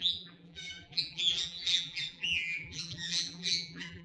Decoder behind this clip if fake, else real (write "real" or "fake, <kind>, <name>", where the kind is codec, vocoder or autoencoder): fake, vocoder, BigVGAN v2